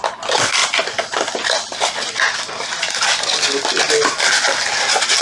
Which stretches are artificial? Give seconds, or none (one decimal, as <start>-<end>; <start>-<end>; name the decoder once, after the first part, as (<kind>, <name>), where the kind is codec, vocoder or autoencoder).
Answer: none